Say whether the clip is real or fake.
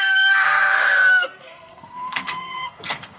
fake